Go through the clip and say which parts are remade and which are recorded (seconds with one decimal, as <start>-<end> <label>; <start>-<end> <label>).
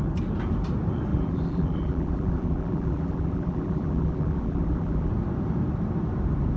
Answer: 0.0-1.1 recorded; 1.1-5.1 remade; 5.1-6.6 recorded